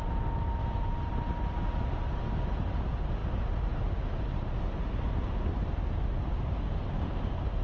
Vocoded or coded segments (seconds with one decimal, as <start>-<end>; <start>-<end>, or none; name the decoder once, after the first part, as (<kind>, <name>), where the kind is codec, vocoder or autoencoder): none